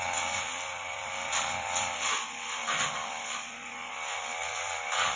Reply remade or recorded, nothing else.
recorded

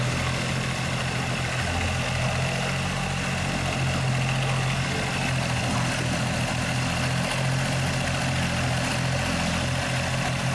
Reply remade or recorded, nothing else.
recorded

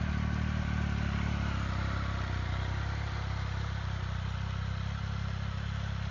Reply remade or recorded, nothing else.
recorded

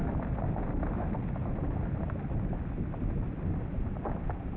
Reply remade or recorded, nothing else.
recorded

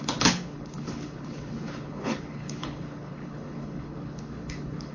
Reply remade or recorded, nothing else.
remade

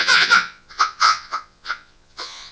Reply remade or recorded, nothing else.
remade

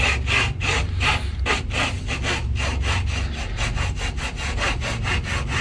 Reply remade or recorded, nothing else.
recorded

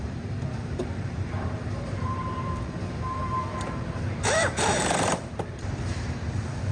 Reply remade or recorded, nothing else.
remade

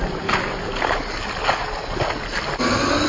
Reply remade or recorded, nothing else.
recorded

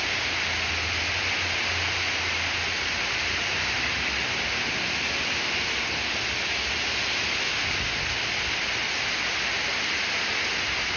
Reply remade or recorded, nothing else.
recorded